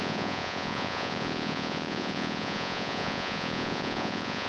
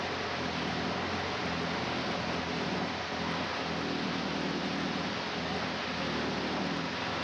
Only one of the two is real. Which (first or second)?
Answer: second